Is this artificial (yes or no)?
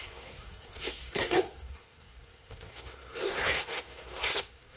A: yes